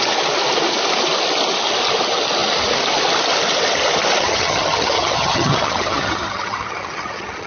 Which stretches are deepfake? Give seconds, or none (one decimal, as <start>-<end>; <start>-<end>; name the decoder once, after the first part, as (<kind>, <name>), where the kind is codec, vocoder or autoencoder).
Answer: 4.2-7.5 (vocoder, HiFi-GAN)